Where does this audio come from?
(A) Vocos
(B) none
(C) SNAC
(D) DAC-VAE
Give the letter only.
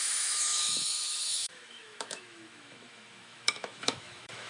D